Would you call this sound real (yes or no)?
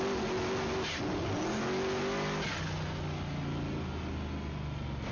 yes